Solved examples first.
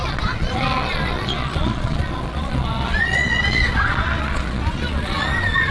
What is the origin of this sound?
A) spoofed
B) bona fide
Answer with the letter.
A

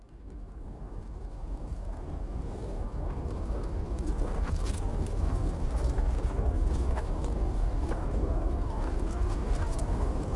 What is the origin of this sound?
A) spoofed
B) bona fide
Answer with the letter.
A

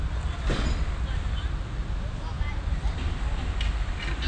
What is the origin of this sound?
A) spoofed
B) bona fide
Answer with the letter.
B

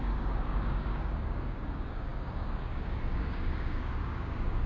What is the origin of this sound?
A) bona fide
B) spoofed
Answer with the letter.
B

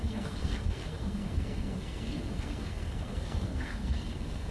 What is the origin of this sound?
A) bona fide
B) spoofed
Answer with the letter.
B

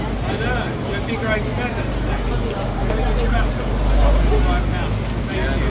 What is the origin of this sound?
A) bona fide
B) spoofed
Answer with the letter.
A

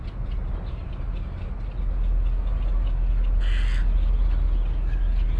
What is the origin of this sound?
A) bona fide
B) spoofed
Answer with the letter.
A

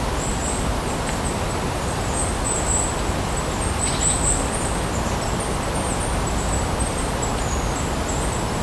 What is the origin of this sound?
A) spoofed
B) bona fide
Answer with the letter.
B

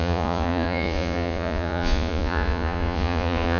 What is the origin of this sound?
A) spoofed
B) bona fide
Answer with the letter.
A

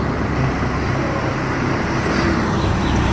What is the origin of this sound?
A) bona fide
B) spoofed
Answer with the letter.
B